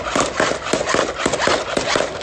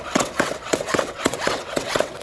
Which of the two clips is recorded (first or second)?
first